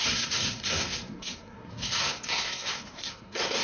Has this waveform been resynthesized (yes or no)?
yes